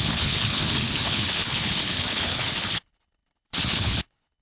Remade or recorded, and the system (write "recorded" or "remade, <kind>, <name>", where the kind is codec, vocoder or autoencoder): remade, codec, HILCodec